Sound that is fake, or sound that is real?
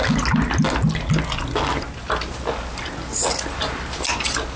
real